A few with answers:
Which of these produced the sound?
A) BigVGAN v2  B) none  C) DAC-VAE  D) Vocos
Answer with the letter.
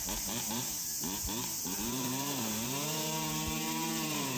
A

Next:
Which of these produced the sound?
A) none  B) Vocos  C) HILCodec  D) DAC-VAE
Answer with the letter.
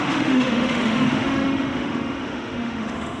D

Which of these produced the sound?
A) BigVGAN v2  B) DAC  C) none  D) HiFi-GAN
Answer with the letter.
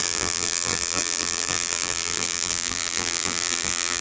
A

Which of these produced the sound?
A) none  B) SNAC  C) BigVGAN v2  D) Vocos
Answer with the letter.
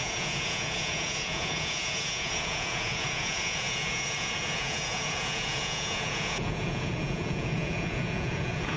D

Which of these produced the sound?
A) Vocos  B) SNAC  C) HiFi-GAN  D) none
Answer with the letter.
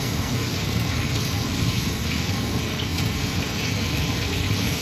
B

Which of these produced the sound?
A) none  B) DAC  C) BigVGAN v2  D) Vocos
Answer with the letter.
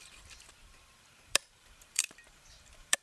C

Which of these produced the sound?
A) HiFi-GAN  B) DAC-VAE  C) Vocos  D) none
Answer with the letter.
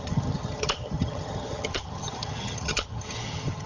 A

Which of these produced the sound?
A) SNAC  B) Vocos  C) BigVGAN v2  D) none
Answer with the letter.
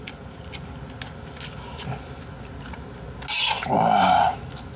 D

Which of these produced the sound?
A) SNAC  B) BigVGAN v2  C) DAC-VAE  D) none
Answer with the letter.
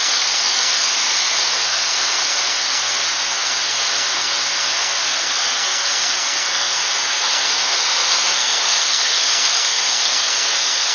A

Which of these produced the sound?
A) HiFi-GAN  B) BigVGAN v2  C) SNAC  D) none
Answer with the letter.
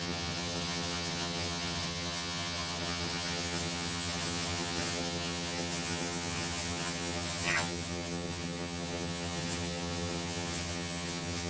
A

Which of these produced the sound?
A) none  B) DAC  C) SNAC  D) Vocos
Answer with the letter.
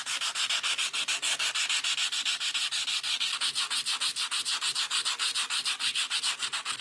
A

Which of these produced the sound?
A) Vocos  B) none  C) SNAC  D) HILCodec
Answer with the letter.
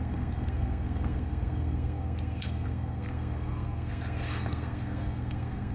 C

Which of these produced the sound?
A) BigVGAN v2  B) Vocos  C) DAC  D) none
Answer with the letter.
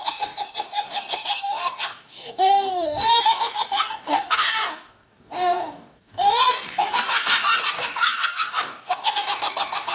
C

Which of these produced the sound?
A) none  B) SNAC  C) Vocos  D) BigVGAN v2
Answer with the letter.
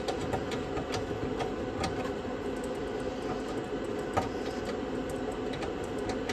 A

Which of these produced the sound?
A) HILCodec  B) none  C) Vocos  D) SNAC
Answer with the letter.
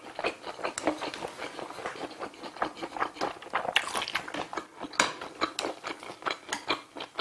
B